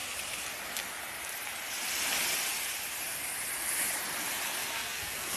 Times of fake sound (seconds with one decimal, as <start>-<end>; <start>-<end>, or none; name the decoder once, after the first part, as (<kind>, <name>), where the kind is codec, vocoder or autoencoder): 4.6-5.4 (codec, SNAC)